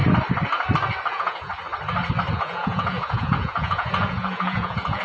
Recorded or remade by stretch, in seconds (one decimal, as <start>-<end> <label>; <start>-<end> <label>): 0.0-1.1 recorded; 1.1-1.5 remade; 1.5-2.3 recorded; 2.3-5.0 remade